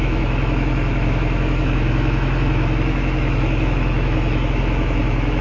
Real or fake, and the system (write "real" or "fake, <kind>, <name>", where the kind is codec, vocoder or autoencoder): fake, autoencoder, DAC-VAE